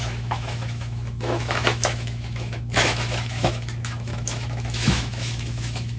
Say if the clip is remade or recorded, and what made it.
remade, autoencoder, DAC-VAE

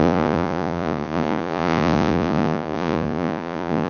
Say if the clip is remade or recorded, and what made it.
remade, vocoder, Vocos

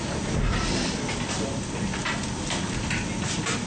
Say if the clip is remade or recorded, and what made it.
recorded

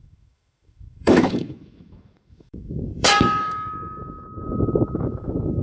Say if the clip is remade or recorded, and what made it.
remade, autoencoder, DAC-VAE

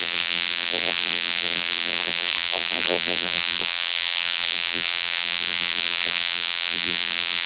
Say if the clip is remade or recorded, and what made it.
remade, vocoder, BigVGAN v2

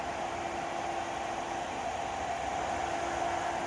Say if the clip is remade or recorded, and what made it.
recorded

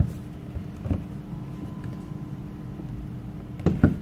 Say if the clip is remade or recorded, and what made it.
recorded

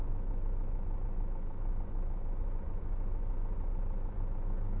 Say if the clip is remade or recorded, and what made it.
remade, vocoder, Vocos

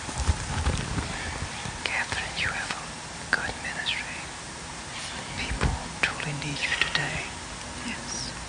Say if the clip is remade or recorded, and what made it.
recorded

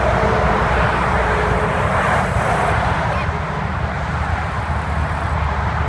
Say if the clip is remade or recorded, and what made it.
remade, vocoder, BigVGAN v2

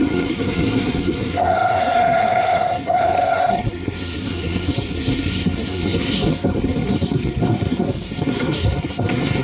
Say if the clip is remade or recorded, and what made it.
remade, codec, SNAC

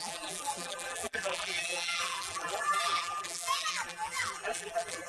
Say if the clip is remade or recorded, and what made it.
remade, vocoder, BigVGAN v2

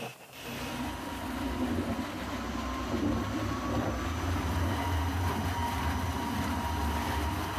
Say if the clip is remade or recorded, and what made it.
recorded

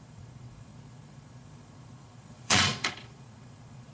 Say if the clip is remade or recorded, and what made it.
remade, vocoder, Vocos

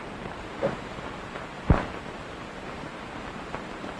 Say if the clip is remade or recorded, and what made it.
remade, vocoder, BigVGAN v2